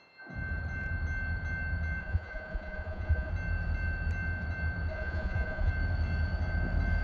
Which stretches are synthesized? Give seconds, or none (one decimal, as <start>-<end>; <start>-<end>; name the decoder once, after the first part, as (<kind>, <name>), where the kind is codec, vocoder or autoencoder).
2.0-3.3 (vocoder, Vocos); 4.9-5.7

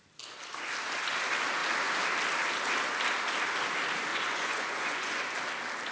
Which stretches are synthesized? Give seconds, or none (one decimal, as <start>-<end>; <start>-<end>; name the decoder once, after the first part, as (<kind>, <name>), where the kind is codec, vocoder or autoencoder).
4.1-5.2 (vocoder, Vocos)

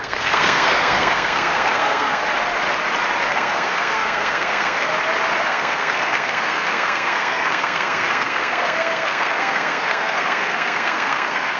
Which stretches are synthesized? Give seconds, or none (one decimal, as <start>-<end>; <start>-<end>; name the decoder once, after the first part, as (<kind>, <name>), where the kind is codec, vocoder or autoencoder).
0.0-2.2 (codec, SNAC); 3.3-4.9; 5.4-11.6

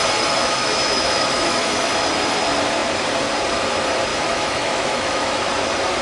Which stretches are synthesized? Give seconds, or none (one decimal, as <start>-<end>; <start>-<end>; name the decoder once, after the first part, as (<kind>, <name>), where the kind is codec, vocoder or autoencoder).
0.4-1.9 (autoencoder, DAC-VAE); 4.1-5.4